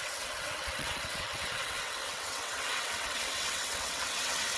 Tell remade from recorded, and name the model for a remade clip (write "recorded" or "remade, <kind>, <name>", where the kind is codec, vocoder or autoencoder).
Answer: remade, vocoder, WaveNeXt